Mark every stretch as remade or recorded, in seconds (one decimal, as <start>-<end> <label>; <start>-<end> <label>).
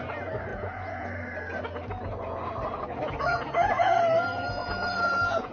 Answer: 0.0-0.5 recorded; 0.5-1.1 remade; 1.1-3.3 recorded; 3.3-4.0 remade; 4.0-4.6 recorded; 4.6-5.5 remade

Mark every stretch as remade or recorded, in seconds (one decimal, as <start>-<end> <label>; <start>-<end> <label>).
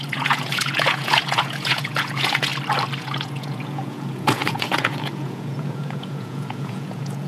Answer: 0.0-2.5 remade; 2.5-3.0 recorded; 3.0-7.3 remade